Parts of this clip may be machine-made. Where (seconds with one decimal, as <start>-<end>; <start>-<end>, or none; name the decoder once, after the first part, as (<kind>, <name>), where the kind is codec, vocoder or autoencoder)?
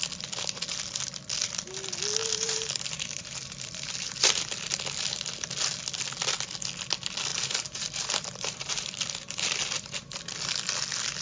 2.2-4.4 (vocoder, BigVGAN v2); 7.3-10.2